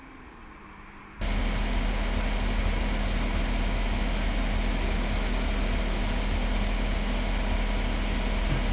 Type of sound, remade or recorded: recorded